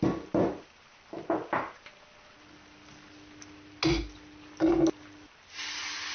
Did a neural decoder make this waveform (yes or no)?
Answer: no